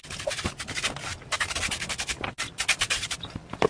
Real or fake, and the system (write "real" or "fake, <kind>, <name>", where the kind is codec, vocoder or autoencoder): real